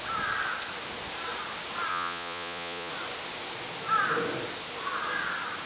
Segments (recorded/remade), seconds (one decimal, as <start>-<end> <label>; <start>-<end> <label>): 0.0-1.9 recorded; 1.9-2.9 remade; 2.9-5.7 recorded